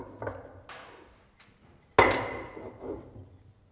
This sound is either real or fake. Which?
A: real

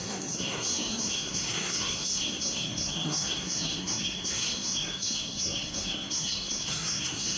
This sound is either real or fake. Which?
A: fake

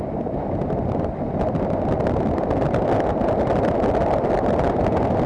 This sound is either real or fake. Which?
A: real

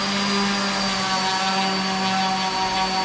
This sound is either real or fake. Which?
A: real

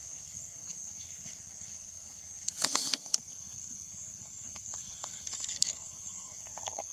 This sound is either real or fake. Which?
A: fake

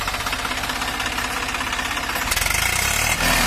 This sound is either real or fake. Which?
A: real